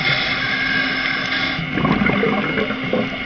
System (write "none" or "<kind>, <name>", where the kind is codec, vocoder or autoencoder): none